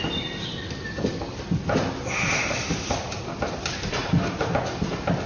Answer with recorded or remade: recorded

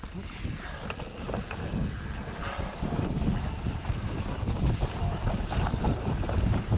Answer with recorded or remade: recorded